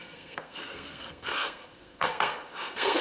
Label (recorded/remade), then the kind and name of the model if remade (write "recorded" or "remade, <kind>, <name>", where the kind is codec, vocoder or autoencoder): remade, codec, SNAC